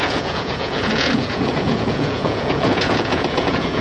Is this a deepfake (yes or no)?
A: yes